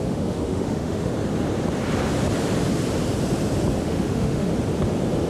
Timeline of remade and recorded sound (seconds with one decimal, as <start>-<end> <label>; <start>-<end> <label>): 0.0-1.1 remade; 1.1-3.8 recorded; 3.8-4.5 remade; 4.5-5.3 recorded